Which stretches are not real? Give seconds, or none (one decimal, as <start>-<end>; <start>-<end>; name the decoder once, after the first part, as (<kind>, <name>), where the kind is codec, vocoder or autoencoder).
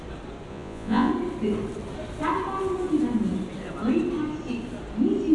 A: 0.5-1.1 (vocoder, Vocos)